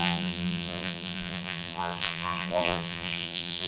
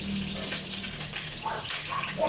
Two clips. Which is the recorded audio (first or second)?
second